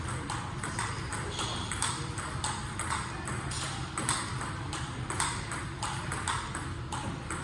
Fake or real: real